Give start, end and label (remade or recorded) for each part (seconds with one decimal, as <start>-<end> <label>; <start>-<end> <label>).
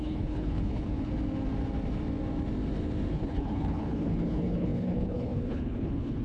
0.0-1.1 remade; 1.1-3.1 recorded; 3.1-6.2 remade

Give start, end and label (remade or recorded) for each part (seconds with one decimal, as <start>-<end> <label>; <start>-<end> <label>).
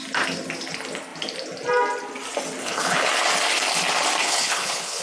0.0-2.6 recorded; 2.6-3.1 remade; 3.1-4.2 recorded; 4.2-5.0 remade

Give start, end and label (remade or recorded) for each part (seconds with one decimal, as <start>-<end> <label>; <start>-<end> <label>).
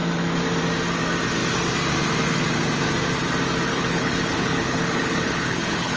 0.0-3.7 recorded; 3.7-6.0 remade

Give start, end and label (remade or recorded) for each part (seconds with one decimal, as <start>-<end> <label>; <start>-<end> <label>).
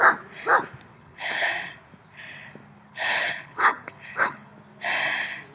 0.0-0.9 recorded; 0.9-1.5 remade; 1.5-2.9 recorded; 2.9-4.5 remade; 4.5-5.5 recorded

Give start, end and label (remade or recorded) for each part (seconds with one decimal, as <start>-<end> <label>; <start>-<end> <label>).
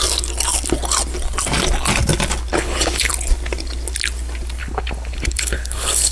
0.0-2.5 recorded; 2.5-3.1 remade; 3.1-4.6 recorded; 4.6-6.1 remade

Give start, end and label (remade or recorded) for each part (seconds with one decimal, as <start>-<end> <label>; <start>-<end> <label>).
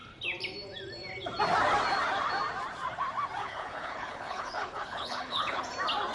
0.0-3.4 recorded; 3.4-5.6 remade; 5.6-6.1 recorded